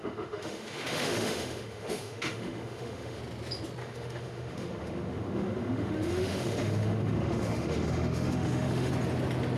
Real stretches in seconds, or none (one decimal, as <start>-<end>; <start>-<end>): 3.2-3.8; 8.9-9.6